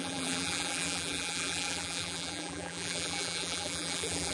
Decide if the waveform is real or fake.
fake